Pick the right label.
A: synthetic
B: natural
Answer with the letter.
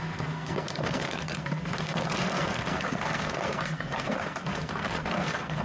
A